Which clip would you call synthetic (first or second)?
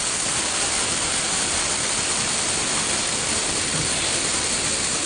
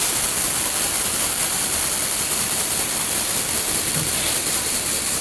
second